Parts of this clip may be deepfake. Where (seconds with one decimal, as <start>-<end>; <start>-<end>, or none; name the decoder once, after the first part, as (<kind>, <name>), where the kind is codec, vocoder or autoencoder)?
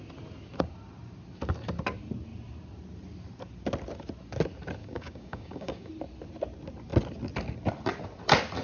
4.8-5.9 (codec, DAC)